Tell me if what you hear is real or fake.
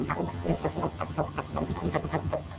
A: fake